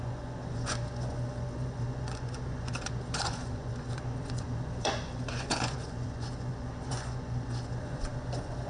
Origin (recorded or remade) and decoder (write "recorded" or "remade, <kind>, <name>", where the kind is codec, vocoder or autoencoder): remade, vocoder, Vocos